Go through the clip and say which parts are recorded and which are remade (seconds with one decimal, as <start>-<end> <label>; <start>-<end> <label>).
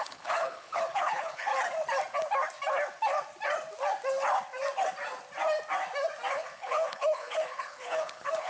0.0-1.5 remade; 1.5-6.3 recorded; 6.3-8.5 remade